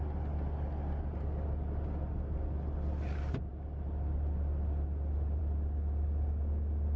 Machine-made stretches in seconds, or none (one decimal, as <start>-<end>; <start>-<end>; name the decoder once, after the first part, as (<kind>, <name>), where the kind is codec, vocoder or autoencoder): none